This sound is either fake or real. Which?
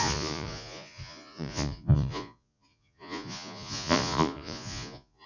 fake